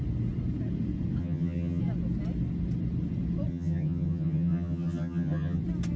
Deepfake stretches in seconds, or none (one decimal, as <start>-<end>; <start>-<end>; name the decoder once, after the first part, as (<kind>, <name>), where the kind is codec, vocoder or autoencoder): 1.2-1.8 (vocoder, HiFi-GAN); 3.5-5.6